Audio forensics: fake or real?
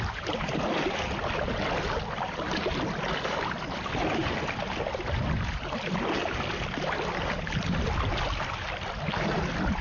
real